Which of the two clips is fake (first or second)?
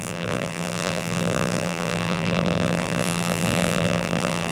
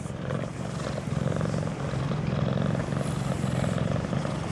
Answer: first